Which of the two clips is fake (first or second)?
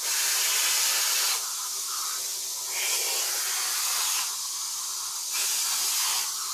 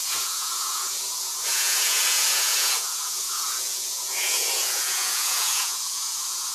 second